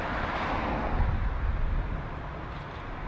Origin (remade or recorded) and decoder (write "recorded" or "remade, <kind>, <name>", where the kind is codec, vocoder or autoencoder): recorded